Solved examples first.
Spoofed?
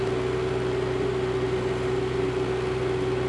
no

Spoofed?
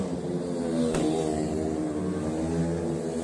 no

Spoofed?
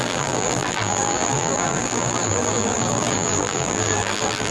yes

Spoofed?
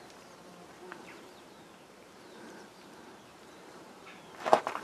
yes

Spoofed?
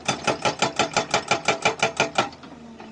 no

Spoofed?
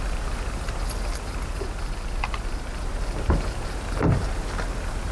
no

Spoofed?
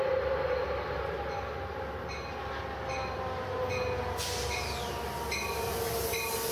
no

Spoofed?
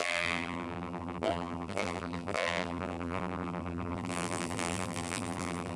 yes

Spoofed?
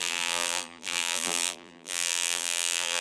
yes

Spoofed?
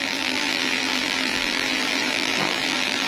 yes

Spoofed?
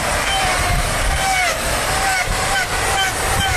yes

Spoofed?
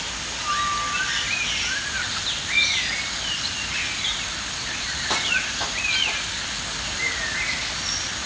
no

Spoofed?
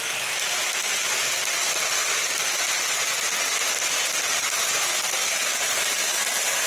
no